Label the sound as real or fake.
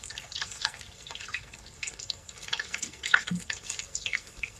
fake